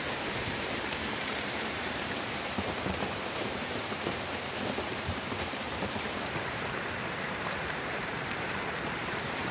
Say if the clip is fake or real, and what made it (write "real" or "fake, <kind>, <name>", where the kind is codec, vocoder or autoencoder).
fake, vocoder, BigVGAN v2